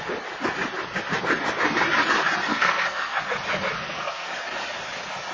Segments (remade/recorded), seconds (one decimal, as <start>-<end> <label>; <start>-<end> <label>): 0.0-2.5 recorded; 2.5-3.2 remade; 3.2-3.8 recorded; 3.8-4.3 remade; 4.3-5.3 recorded